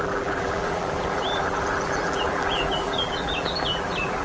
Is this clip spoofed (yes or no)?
yes